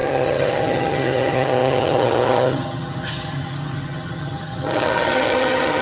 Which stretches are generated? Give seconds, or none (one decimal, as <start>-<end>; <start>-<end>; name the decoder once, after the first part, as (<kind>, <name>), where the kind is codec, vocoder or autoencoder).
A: 0.0-5.8 (vocoder, HiFi-GAN)